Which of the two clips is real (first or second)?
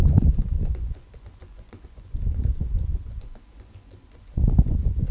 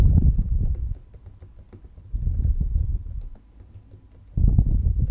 second